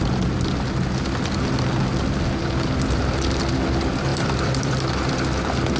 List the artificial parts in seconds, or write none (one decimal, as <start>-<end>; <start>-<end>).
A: 4.1-5.1